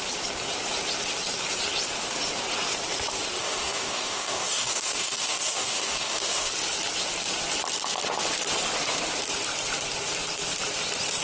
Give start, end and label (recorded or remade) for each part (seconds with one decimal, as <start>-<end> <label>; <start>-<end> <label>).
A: 0.0-3.4 recorded; 3.4-6.5 remade; 6.5-11.2 recorded